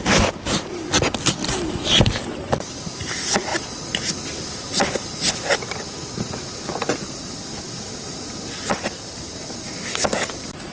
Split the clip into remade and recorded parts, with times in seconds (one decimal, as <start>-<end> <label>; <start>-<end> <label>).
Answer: 0.0-1.4 recorded; 1.4-2.0 remade; 2.0-2.4 recorded; 2.4-3.1 remade; 3.1-10.7 recorded